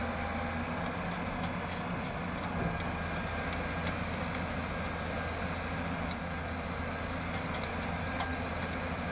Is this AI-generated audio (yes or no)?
no